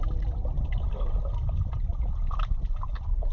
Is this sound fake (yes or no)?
no